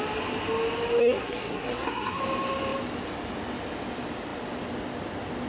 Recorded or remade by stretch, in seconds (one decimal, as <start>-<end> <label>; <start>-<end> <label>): 0.0-1.0 recorded; 1.0-2.2 remade; 2.2-5.5 recorded